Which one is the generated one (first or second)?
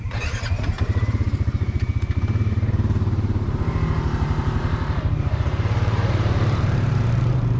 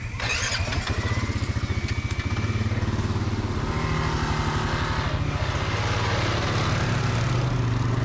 first